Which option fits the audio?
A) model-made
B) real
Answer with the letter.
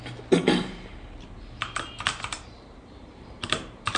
A